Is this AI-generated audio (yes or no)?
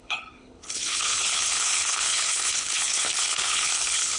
yes